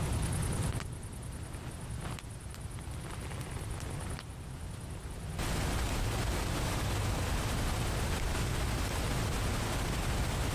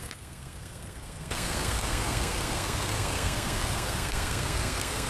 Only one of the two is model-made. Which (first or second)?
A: second